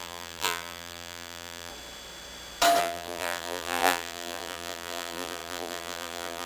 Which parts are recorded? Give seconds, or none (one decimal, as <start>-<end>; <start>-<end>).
1.7-2.8

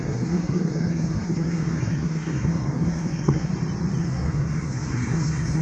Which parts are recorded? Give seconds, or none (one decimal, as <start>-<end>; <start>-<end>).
3.5-4.0

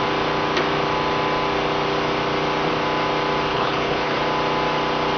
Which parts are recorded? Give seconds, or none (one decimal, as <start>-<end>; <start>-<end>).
0.0-3.5; 4.2-5.2

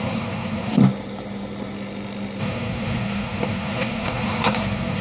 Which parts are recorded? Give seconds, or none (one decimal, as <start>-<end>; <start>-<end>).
0.8-2.4

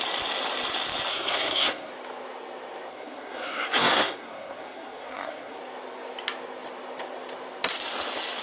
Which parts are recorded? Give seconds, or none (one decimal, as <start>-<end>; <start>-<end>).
0.0-1.1; 1.9-2.9; 5.6-8.4

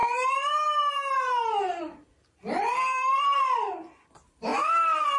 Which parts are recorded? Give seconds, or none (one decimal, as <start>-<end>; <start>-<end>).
0.0-1.8; 4.5-5.2

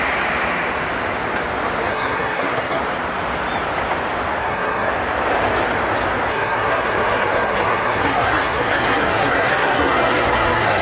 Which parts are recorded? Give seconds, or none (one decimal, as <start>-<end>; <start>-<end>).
0.0-1.9; 2.8-4.4; 4.9-6.3

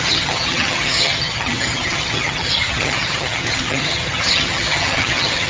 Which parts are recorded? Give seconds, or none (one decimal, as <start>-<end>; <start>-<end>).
none